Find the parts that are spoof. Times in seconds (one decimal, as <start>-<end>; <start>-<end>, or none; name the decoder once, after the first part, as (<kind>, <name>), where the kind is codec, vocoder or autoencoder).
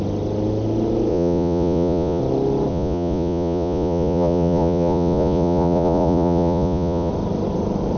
1.1-2.2 (vocoder, Vocos); 2.7-7.1